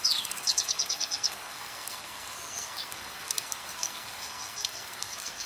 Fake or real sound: fake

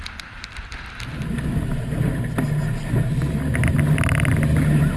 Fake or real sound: real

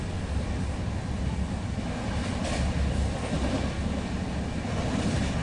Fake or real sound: real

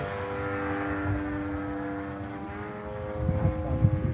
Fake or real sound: real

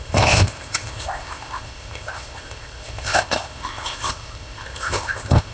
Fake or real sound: fake